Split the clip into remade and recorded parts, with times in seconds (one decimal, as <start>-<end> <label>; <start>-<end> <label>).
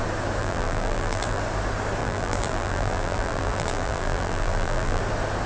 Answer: 0.0-0.4 recorded; 0.4-1.4 remade; 1.4-2.0 recorded; 2.0-5.0 remade; 5.0-5.5 recorded